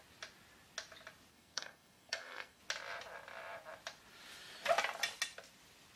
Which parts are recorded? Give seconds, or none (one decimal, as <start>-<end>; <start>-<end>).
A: 0.0-1.3; 2.6-6.0